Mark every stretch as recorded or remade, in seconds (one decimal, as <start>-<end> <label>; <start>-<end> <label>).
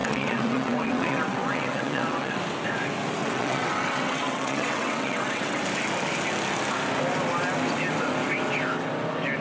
0.0-2.4 remade; 2.4-3.2 recorded; 3.2-5.6 remade; 5.6-9.4 recorded